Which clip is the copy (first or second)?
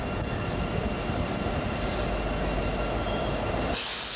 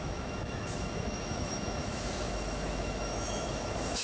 second